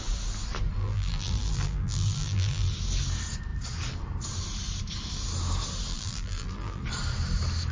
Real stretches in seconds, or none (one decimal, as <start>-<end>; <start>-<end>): 0.0-0.8; 2.7-5.9; 6.8-7.7